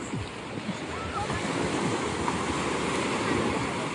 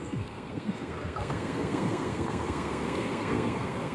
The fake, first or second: second